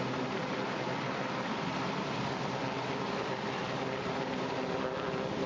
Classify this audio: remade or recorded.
recorded